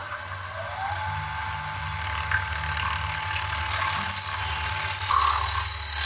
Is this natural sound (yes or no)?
yes